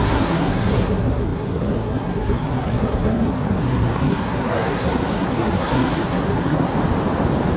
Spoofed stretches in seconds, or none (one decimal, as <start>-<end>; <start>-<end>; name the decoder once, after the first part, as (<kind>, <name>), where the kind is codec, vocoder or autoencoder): 0.0-6.7 (codec, SNAC)